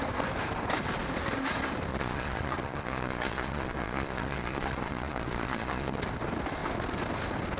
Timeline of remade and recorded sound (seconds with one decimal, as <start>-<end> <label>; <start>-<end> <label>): 0.0-1.9 recorded; 1.9-6.0 remade; 6.0-7.6 recorded